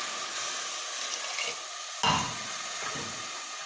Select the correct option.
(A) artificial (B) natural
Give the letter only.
B